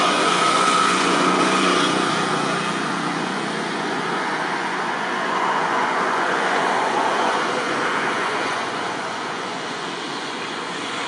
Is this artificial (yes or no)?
yes